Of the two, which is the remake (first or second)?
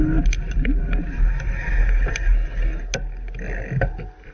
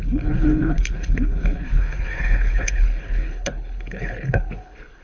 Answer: second